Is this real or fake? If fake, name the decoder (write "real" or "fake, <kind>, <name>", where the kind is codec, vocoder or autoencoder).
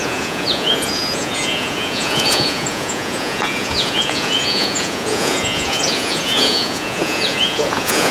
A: fake, vocoder, Vocos